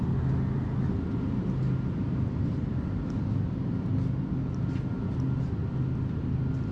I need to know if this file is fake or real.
real